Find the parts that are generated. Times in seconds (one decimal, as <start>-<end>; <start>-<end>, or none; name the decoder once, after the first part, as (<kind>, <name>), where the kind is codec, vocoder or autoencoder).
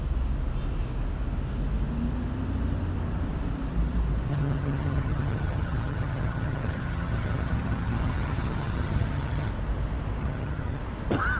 4.3-9.5 (vocoder, HiFi-GAN); 10.2-10.8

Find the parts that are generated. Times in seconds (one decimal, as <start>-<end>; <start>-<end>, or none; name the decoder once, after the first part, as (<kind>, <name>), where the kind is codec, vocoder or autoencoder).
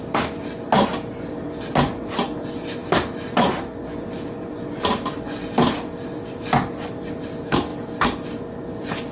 none